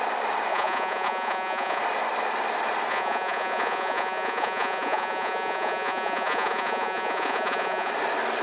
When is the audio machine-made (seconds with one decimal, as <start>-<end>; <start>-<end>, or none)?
0.5-1.8; 2.9-7.9